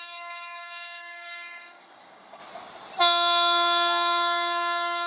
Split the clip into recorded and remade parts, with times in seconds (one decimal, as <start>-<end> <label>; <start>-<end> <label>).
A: 0.0-2.4 remade; 2.4-3.0 recorded; 3.0-5.1 remade